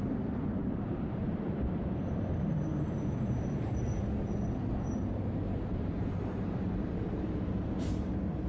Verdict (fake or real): fake